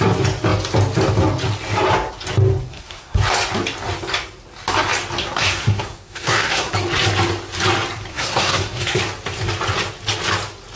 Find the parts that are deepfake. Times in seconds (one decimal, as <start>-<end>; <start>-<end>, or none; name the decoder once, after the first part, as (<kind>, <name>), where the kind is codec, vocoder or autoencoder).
2.7-3.2 (codec, SNAC); 5.2-6.7; 8.1-9.0